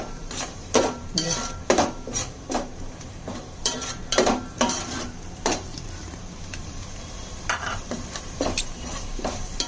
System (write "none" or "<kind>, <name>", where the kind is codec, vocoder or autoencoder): vocoder, BigVGAN v2